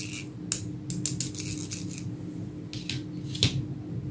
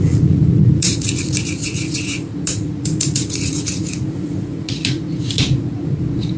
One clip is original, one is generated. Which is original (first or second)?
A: first